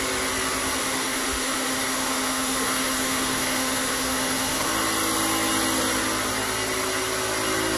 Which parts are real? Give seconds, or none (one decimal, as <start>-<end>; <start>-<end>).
0.0-0.8; 4.7-7.8